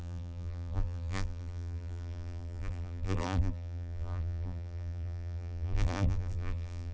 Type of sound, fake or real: fake